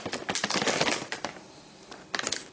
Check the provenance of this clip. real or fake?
real